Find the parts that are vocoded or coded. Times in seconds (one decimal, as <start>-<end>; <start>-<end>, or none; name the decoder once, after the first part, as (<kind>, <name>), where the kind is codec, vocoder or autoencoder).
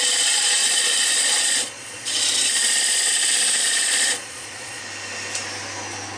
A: 0.6-3.1 (vocoder, Vocos); 3.6-4.8